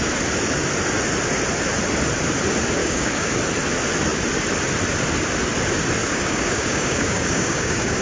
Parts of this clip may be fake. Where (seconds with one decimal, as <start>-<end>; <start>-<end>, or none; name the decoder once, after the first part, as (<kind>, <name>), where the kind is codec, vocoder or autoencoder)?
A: 2.8-3.4 (codec, DAC); 6.0-8.0